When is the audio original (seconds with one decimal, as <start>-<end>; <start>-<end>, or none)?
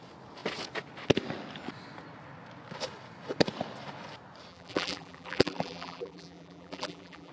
0.0-4.5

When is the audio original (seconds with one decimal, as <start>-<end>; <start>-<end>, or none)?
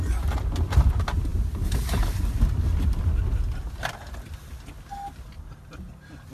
0.0-6.3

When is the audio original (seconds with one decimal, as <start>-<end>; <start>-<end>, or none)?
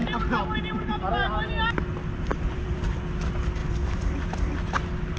0.0-2.3; 3.0-3.6; 4.3-5.2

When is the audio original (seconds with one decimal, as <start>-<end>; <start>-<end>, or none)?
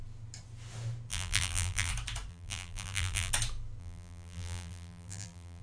0.0-1.1; 1.9-2.3; 3.3-3.8